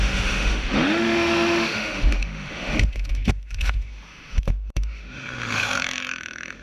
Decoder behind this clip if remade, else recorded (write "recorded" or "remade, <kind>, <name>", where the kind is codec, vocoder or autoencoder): remade, autoencoder, DAC-VAE